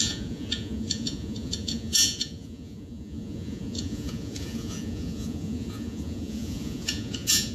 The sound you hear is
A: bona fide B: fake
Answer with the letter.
B